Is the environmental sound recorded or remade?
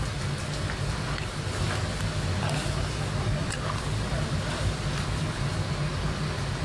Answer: recorded